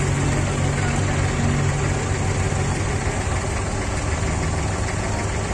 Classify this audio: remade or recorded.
recorded